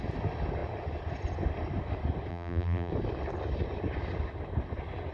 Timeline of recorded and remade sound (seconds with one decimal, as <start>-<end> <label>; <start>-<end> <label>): 0.0-2.3 recorded; 2.3-2.9 remade; 2.9-5.1 recorded